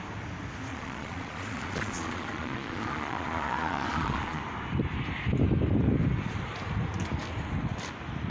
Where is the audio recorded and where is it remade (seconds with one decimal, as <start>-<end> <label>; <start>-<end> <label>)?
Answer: 0.0-0.7 recorded; 0.7-4.4 remade; 4.4-8.3 recorded